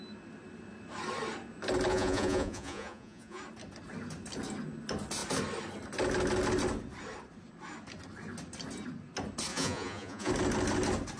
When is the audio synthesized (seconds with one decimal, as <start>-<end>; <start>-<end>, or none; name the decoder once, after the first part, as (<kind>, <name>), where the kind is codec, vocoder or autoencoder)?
1.9-3.4 (vocoder, Vocos); 9.5-10.3